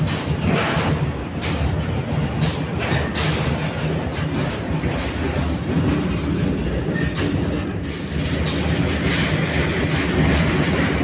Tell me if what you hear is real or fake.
real